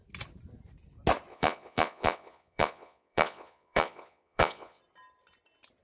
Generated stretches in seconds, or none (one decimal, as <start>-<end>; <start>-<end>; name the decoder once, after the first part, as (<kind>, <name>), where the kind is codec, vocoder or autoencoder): 1.3-4.8 (vocoder, Vocos)